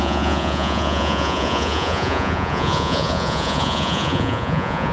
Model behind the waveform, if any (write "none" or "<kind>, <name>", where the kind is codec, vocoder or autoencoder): vocoder, Vocos